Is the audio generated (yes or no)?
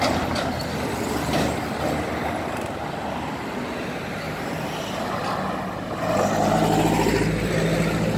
no